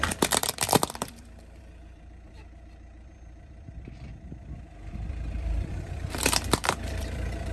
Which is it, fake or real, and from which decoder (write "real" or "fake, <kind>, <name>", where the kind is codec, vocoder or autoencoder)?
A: fake, vocoder, BigVGAN v2